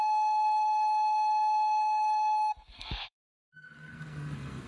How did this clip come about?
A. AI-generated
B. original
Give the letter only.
A